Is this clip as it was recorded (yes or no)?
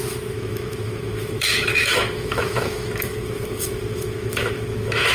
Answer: no